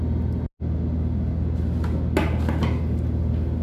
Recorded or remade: recorded